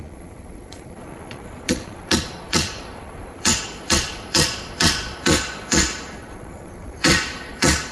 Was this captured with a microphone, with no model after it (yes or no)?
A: no